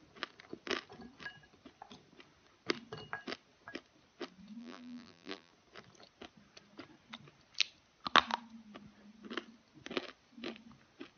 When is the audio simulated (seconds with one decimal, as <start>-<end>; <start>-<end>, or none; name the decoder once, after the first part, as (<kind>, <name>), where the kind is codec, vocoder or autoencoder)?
4.6-5.5 (vocoder, BigVGAN v2)